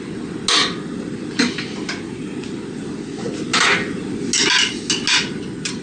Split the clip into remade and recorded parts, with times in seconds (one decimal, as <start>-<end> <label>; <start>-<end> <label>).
0.0-5.8 recorded